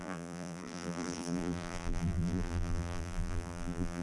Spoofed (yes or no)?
yes